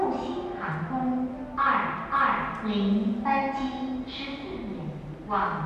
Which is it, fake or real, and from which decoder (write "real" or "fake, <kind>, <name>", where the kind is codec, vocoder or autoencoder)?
real